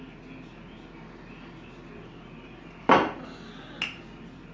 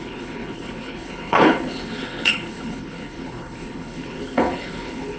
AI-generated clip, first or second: second